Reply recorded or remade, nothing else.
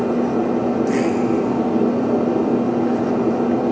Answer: recorded